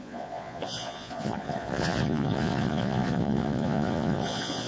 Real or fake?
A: fake